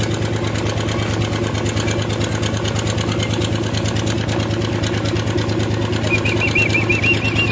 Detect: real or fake real